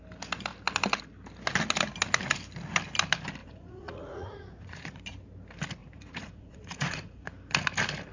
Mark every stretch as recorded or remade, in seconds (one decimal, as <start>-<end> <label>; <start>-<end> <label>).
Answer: 0.0-3.4 recorded; 3.4-5.0 remade; 5.0-5.8 recorded; 5.8-7.3 remade; 7.3-8.1 recorded